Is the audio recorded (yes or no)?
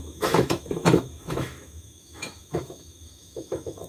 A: no